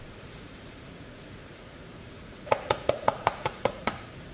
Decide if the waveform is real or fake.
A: fake